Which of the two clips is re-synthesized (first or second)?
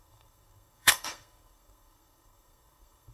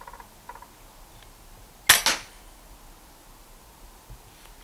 first